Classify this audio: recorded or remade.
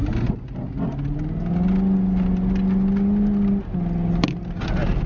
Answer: recorded